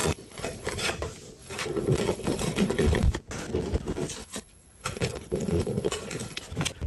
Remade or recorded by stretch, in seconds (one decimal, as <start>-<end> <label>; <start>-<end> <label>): 0.0-0.9 remade; 0.9-1.4 recorded; 1.4-3.1 remade; 3.1-4.2 recorded; 4.2-6.4 remade; 6.4-6.9 recorded